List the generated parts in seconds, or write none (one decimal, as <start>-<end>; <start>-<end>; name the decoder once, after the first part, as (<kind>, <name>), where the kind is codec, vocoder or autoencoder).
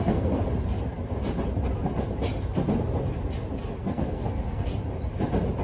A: 0.0-0.4 (codec, SNAC); 3.8-4.7